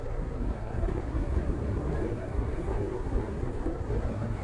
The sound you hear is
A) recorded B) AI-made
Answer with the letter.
B